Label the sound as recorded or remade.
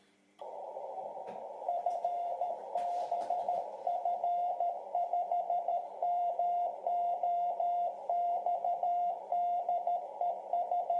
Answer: remade